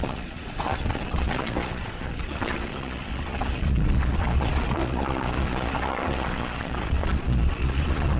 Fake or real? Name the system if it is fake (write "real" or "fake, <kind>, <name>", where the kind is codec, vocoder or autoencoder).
fake, vocoder, Vocos